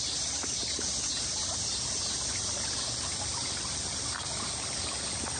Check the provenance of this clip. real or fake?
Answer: real